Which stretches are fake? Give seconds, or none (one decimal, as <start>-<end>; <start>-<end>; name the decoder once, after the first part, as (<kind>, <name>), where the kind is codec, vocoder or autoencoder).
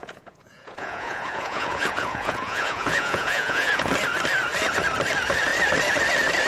0.0-3.9 (vocoder, Vocos)